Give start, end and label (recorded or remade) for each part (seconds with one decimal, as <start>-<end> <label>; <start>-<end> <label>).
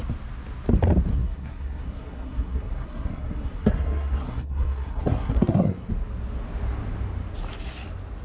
0.0-1.1 recorded; 1.1-5.9 remade; 5.9-8.2 recorded